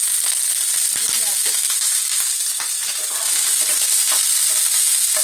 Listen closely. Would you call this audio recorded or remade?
recorded